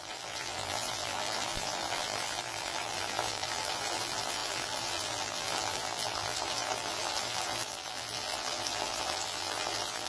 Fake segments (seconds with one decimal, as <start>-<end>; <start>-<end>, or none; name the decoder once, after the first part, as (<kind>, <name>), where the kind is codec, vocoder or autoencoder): 0.0-10.1 (vocoder, BigVGAN v2)

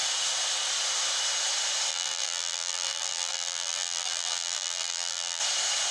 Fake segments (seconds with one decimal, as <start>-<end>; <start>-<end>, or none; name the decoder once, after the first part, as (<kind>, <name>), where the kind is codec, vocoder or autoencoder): 1.9-5.4 (vocoder, BigVGAN v2)

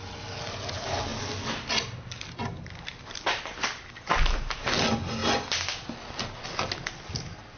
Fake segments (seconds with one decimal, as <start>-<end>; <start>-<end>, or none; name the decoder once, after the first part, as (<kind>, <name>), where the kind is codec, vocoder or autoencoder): none

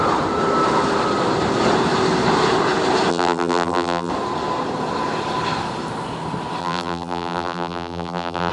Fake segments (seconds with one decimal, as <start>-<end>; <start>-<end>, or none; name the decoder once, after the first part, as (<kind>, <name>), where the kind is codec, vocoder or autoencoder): 3.1-4.1 (vocoder, BigVGAN v2); 6.6-8.5

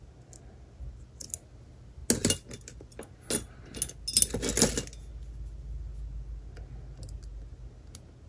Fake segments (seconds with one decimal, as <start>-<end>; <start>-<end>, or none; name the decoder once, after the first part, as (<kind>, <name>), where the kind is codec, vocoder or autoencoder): none

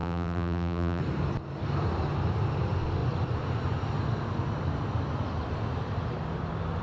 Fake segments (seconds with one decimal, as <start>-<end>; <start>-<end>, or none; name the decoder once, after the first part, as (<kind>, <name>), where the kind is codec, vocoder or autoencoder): 0.0-1.0 (vocoder, BigVGAN v2)

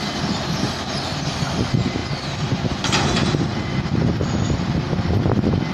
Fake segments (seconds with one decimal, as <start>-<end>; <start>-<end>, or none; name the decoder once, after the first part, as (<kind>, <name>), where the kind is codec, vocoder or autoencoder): none